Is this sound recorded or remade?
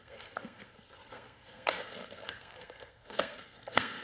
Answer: remade